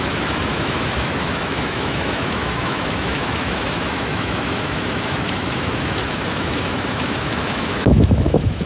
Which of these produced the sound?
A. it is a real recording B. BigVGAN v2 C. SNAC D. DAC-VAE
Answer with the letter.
D